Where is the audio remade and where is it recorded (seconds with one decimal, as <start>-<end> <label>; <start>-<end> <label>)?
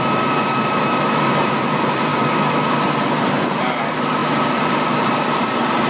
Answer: 0.0-2.1 remade; 2.1-3.4 recorded; 3.4-5.9 remade